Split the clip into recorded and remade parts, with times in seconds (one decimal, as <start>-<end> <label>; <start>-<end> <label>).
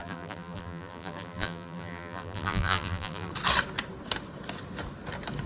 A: 0.0-3.3 remade; 3.3-5.5 recorded